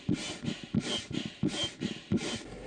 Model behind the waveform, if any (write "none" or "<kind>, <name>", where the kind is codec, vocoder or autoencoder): none